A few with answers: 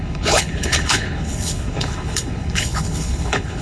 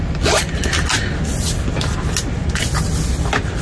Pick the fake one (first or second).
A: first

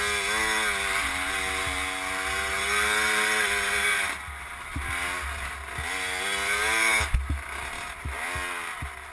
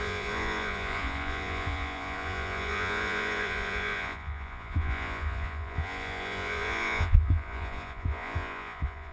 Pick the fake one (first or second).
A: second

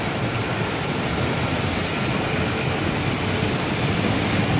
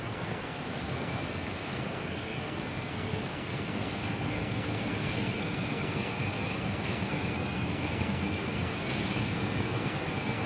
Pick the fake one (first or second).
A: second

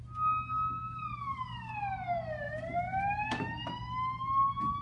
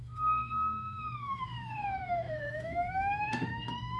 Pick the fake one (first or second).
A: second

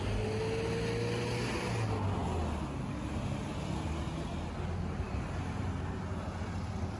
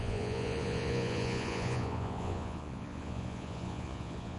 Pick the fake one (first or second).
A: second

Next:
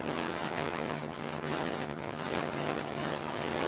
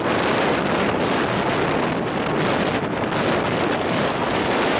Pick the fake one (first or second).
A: first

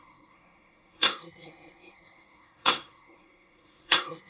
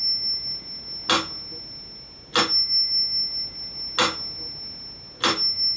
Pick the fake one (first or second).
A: first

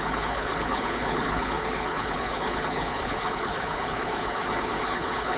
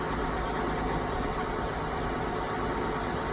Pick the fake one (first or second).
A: first